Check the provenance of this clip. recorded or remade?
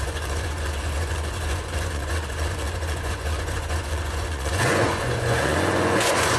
remade